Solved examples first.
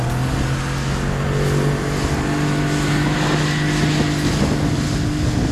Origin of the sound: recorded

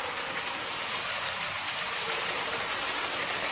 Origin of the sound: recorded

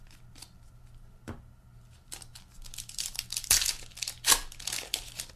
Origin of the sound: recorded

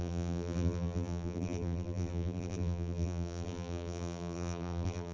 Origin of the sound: remade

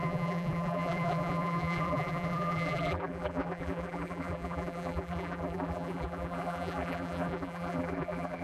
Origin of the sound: remade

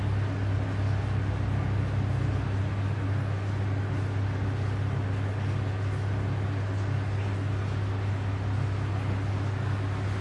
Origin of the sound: recorded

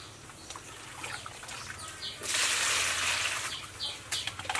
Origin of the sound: recorded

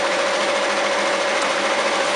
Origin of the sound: remade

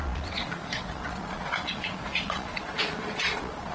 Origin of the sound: remade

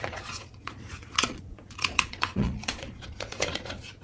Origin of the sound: remade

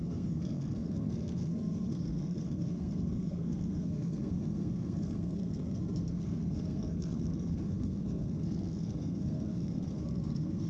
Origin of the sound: remade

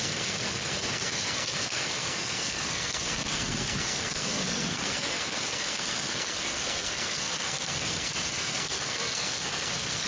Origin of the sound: remade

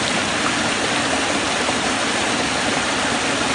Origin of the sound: recorded